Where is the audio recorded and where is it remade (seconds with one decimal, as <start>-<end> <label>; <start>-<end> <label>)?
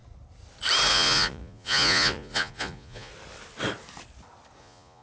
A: 0.0-0.9 recorded; 0.9-3.1 remade; 3.1-4.6 recorded; 4.6-5.0 remade